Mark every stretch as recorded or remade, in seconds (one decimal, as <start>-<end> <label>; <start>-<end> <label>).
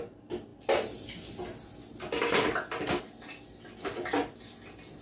0.0-5.0 recorded